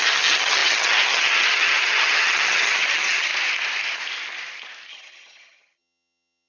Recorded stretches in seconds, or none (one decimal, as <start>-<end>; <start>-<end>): 3.3-4.9